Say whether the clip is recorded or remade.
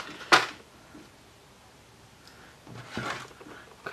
recorded